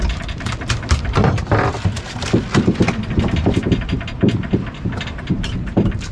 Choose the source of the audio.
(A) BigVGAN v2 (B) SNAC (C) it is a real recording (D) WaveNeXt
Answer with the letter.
A